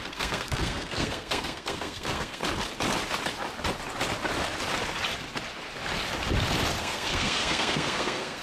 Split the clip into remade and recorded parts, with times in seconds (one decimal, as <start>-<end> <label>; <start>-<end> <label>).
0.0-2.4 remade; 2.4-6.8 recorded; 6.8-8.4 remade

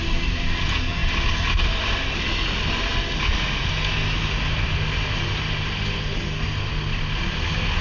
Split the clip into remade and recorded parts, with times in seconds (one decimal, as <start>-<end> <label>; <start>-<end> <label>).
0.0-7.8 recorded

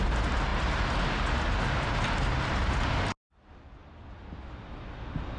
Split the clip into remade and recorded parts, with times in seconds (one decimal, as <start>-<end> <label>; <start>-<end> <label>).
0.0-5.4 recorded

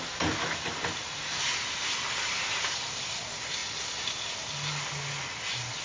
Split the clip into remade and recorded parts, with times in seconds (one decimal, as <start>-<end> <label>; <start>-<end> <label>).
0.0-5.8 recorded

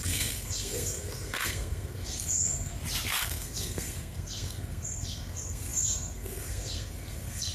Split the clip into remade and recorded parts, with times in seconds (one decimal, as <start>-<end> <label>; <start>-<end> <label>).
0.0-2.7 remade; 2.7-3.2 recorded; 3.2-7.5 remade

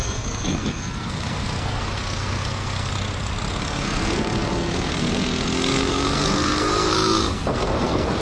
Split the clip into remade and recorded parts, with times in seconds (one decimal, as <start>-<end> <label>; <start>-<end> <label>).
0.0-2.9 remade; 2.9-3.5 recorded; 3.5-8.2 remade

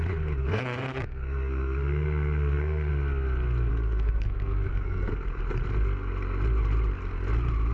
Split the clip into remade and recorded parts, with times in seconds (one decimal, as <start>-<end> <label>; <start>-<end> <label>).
0.0-0.4 recorded; 0.4-2.9 remade; 2.9-3.7 recorded; 3.7-5.1 remade; 5.1-7.7 recorded